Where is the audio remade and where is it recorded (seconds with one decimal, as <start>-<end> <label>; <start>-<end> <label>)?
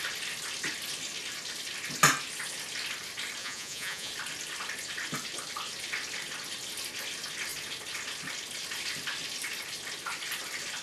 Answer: 0.0-3.4 recorded; 3.4-4.1 remade; 4.1-10.8 recorded